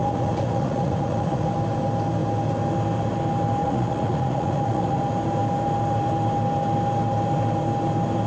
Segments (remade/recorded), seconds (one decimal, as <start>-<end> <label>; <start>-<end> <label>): 0.0-1.5 remade; 1.5-3.6 recorded; 3.6-5.0 remade; 5.0-8.3 recorded